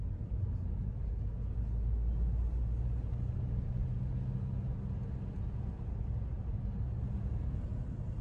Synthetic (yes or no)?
no